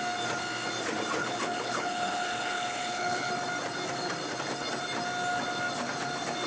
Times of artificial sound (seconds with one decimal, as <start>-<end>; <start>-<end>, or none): 1.2-3.3